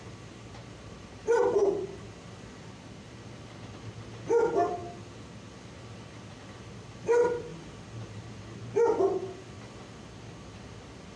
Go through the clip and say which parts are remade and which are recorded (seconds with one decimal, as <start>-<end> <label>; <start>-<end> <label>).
0.0-11.2 recorded

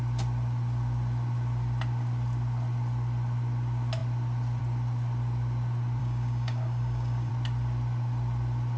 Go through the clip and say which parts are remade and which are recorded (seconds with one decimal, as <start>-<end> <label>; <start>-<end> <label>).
0.0-6.0 recorded; 6.0-7.3 remade; 7.3-8.8 recorded

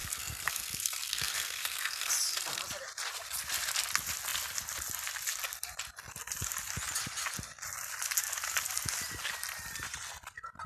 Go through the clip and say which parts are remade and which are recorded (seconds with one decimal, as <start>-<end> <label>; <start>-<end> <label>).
0.0-2.1 remade; 2.1-10.7 recorded

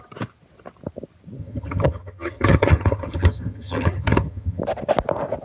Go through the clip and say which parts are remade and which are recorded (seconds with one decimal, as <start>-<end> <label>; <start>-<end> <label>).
0.0-1.4 recorded; 1.4-4.6 remade; 4.6-5.4 recorded

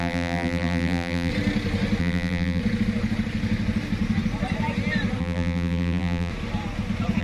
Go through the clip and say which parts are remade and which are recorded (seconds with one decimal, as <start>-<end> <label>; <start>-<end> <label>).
0.0-1.3 remade; 1.3-2.0 recorded; 2.0-2.6 remade; 2.6-5.2 recorded; 5.2-6.3 remade; 6.3-7.2 recorded

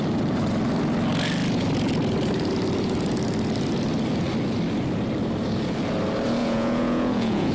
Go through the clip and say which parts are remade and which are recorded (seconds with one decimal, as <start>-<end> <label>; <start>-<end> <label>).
0.0-6.4 recorded; 6.4-7.5 remade